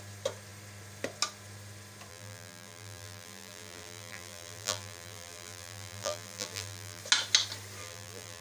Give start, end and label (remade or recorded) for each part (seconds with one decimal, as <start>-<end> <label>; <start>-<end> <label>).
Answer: 0.0-2.1 recorded; 2.1-7.0 remade; 7.0-7.8 recorded; 7.8-8.4 remade